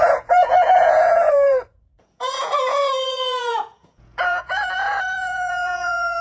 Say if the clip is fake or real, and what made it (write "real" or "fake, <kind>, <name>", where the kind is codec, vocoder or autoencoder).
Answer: fake, vocoder, Vocos